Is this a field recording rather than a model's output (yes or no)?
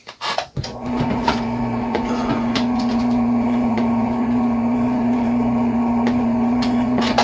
no